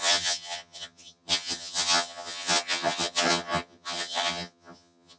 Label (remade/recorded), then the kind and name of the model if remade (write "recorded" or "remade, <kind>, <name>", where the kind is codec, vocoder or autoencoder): remade, vocoder, HiFi-GAN